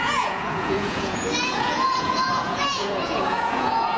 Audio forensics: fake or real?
fake